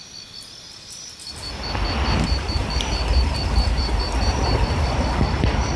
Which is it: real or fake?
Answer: real